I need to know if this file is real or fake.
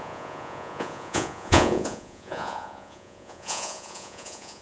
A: fake